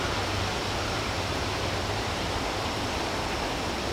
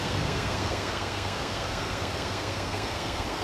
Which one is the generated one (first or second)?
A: second